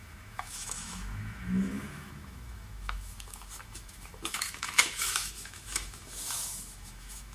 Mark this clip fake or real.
fake